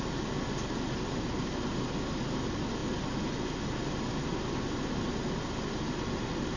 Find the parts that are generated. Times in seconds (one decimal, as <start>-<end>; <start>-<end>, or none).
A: none